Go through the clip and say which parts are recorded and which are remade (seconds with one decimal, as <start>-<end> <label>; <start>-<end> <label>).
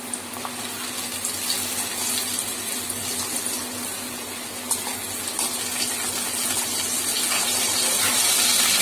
0.0-8.8 recorded